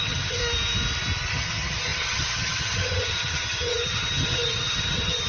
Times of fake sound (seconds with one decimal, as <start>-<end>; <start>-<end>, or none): 0.0-0.4; 1.3-5.3

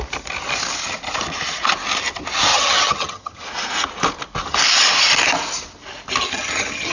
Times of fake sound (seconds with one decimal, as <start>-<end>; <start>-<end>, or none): 2.5-3.4; 6.2-6.9

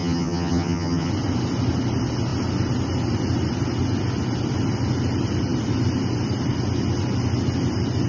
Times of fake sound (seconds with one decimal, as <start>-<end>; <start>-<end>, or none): 0.0-1.1

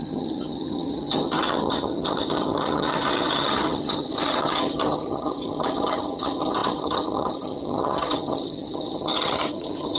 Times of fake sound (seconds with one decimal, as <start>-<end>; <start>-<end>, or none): 0.0-10.0

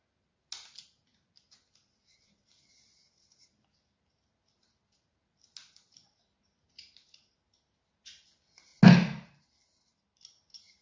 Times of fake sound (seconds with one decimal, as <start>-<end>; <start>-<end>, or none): none

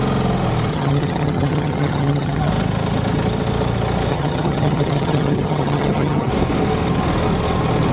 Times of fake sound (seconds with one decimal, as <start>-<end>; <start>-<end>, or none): 0.7-2.5; 4.1-6.3

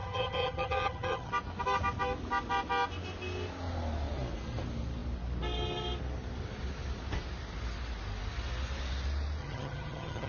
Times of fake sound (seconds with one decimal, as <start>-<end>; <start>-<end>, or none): 0.0-1.3; 9.4-10.3